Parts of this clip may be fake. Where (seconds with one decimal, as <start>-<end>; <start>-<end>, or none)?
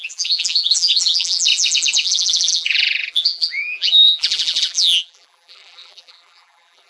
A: 0.0-6.9